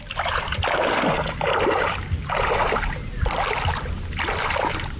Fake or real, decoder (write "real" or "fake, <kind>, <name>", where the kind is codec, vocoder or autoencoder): real